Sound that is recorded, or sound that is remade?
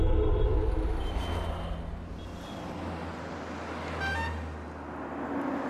recorded